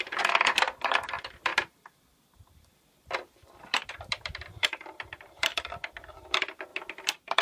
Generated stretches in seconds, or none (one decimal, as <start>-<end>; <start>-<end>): 0.0-1.5; 3.9-5.5; 6.1-6.7